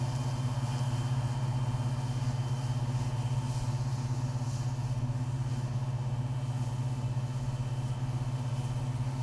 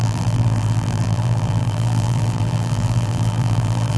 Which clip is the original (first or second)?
first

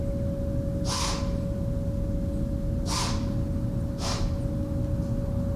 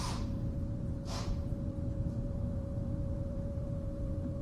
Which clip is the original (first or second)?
first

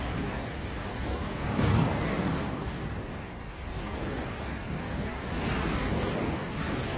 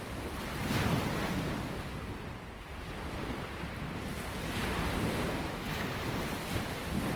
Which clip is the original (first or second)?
second